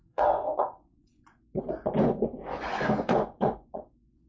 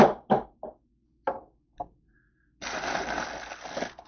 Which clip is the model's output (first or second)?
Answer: first